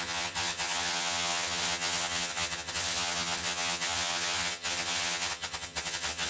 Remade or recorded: remade